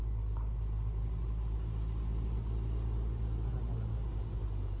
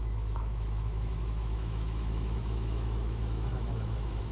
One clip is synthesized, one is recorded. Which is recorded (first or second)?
first